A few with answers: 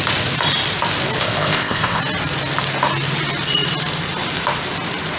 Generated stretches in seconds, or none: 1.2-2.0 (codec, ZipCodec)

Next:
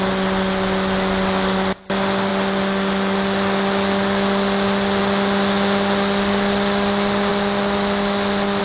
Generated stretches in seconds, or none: none

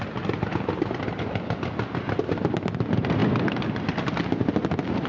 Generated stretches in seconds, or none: none

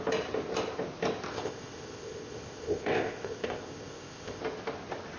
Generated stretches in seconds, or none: 1.3-4.4 (codec, ZipCodec)

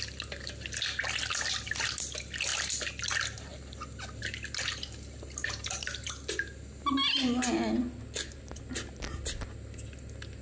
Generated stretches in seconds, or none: none